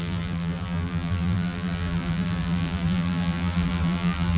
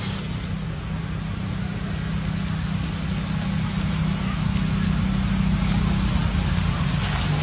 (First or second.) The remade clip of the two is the first